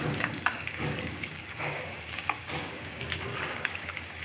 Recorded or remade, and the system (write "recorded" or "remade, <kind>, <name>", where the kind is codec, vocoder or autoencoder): remade, codec, DAC